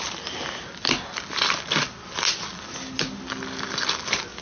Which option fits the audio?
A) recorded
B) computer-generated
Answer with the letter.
A